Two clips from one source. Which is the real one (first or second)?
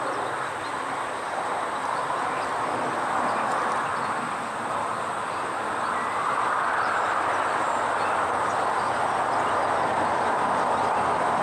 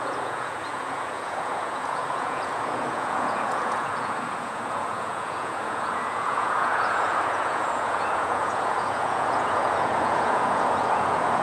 first